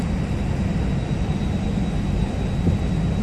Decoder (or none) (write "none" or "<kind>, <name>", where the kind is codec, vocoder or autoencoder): none